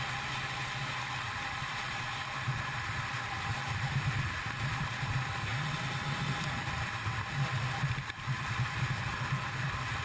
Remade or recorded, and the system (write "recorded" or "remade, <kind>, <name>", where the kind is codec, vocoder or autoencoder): remade, vocoder, BigVGAN v2